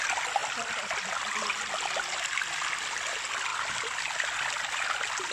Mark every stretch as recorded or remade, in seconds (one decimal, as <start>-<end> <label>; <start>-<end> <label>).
0.0-5.3 recorded